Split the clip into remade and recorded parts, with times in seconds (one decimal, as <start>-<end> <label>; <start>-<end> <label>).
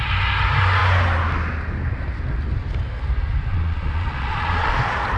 0.0-3.5 recorded; 3.5-4.7 remade; 4.7-5.2 recorded